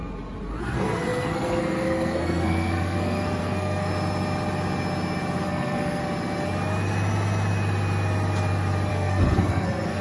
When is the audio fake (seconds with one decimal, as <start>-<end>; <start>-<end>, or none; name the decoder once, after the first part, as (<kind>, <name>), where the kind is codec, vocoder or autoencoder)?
0.6-3.9 (codec, SNAC); 5.4-6.0; 8.9-10.0